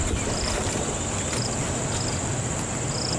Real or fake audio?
fake